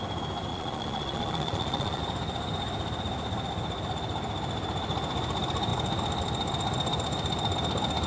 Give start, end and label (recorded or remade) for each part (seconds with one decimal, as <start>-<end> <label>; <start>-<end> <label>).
0.0-0.5 recorded; 0.5-2.0 remade; 2.0-8.1 recorded